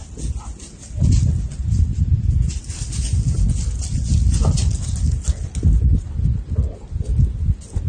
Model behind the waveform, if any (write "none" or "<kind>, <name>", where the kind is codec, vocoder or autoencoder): none